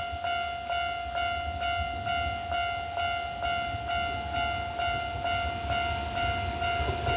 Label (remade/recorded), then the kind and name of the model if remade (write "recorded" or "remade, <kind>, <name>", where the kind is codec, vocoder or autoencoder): recorded